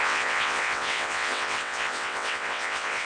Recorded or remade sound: remade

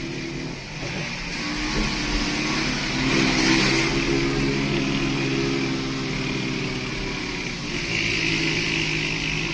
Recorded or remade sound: recorded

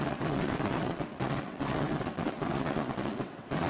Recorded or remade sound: remade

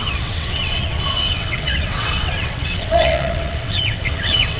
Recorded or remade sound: remade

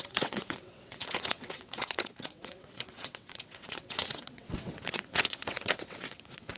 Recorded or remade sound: remade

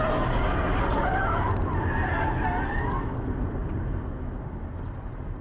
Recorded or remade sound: recorded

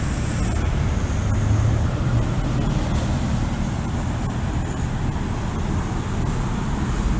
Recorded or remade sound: recorded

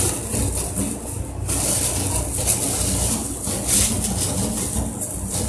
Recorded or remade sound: recorded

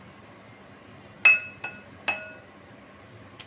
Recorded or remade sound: recorded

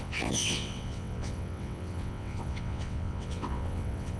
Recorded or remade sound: remade